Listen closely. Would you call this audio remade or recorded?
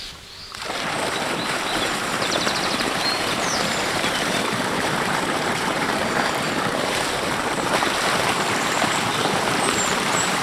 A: remade